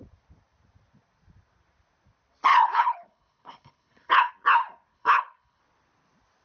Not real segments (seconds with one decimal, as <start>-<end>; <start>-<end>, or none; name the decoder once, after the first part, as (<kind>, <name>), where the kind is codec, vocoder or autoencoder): 2.5-4.3 (codec, HILCodec); 4.9-5.6